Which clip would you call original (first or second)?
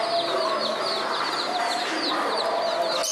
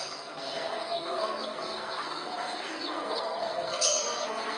first